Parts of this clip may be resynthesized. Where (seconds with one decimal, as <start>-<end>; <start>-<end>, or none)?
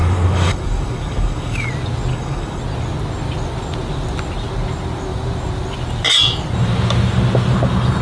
0.0-1.7; 2.1-2.6